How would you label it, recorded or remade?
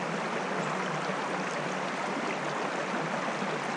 recorded